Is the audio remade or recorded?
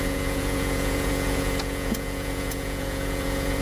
remade